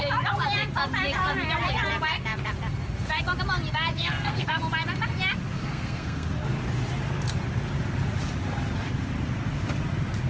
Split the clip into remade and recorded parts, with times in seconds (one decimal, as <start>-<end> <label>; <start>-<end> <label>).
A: 0.0-3.9 recorded; 3.9-4.6 remade; 4.6-5.6 recorded; 5.6-6.3 remade; 6.3-10.3 recorded